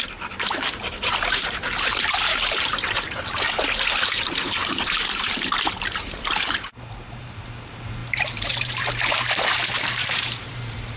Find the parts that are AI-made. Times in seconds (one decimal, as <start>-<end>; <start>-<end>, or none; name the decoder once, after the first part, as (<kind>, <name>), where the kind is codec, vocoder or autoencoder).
0.0-2.7 (vocoder, BigVGAN v2); 3.9-11.0